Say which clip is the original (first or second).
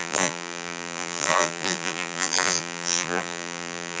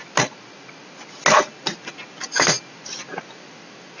second